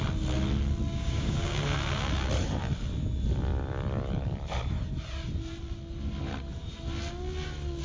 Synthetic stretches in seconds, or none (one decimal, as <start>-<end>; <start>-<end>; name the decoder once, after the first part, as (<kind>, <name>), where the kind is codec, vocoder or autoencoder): 0.9-1.6 (codec, DAC)